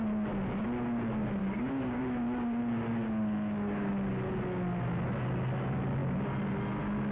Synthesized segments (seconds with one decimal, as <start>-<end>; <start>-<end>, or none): 1.4-2.0; 2.6-3.9